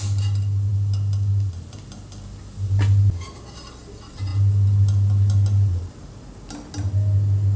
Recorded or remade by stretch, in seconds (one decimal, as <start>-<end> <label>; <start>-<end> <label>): 0.0-7.6 recorded